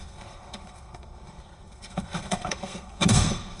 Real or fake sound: fake